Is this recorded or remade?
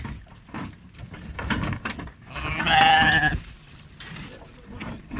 recorded